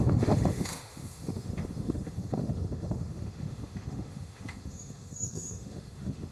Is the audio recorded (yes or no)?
no